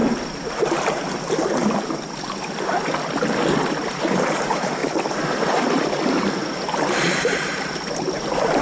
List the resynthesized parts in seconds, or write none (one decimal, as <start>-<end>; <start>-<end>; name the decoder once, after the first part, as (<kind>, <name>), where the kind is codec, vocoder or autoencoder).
4.3-4.8 (vocoder, BigVGAN v2); 5.7-8.6